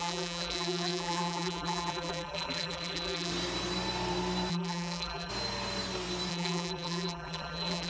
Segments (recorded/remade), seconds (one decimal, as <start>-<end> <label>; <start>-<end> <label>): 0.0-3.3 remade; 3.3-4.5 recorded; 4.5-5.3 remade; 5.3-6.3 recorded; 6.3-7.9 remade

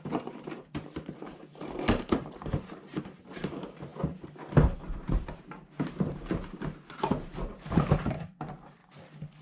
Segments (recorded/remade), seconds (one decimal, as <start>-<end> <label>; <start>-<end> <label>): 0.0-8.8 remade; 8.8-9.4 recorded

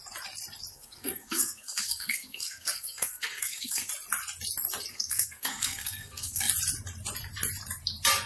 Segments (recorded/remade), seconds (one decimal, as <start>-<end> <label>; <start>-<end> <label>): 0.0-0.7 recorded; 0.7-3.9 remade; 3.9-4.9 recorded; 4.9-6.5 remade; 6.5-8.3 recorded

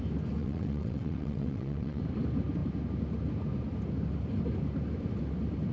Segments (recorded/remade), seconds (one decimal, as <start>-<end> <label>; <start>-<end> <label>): 0.0-0.4 recorded; 0.4-2.0 remade; 2.0-5.7 recorded

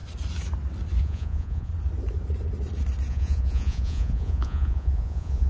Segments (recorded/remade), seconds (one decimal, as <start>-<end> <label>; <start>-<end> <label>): 0.0-1.0 recorded; 1.0-1.7 remade; 1.7-3.1 recorded; 3.1-5.5 remade